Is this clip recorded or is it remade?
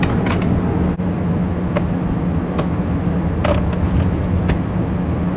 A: recorded